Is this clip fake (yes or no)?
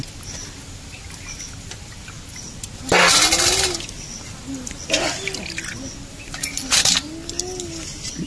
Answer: no